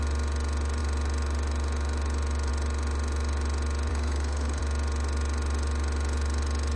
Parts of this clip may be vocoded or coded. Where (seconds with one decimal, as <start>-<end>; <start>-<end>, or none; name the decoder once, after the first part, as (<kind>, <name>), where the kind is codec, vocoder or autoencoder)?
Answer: 3.9-4.6 (codec, SNAC)